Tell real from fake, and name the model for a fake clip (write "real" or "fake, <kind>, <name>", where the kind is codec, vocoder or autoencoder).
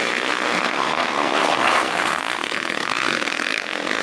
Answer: fake, codec, SNAC